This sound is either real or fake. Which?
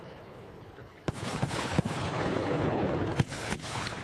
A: fake